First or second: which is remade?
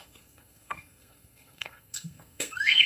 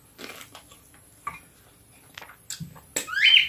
first